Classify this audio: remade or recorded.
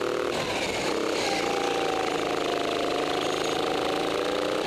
recorded